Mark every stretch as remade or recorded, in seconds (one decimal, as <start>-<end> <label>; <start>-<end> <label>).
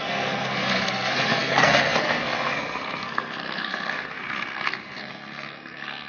0.0-6.1 remade